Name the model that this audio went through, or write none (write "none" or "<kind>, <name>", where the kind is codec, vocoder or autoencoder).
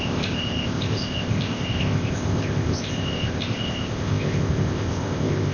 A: codec, ZipCodec